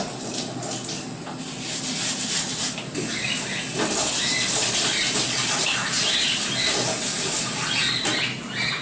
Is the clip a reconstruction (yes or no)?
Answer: no